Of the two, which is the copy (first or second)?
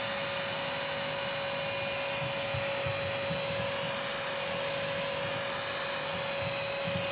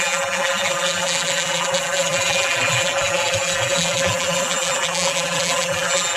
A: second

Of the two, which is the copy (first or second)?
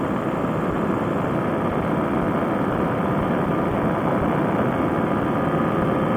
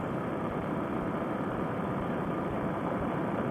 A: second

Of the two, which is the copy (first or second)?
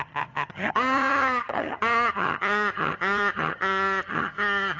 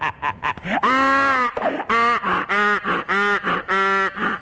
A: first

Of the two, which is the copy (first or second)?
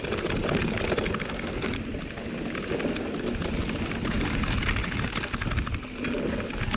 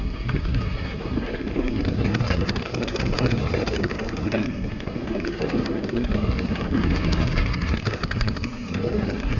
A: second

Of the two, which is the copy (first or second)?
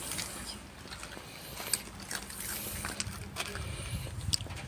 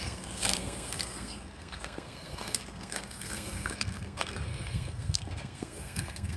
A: second